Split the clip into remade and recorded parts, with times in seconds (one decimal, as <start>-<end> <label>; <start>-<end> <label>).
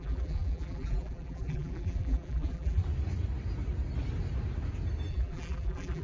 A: 0.0-2.8 remade; 2.8-5.1 recorded; 5.1-6.0 remade